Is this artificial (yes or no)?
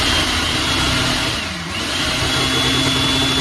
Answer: no